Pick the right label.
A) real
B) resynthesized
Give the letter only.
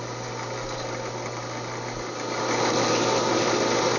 A